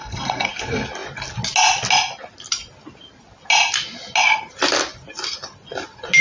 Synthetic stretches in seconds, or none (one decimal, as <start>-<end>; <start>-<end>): 0.0-0.5